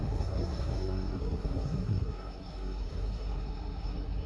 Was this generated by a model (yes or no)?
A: yes